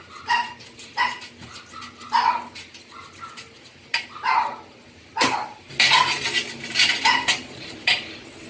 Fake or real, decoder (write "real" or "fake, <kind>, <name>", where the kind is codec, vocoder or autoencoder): real